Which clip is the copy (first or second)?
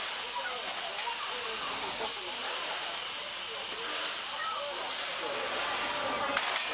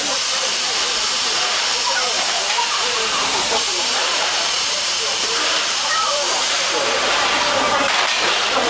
second